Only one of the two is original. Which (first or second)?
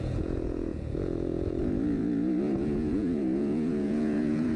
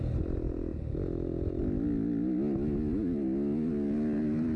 second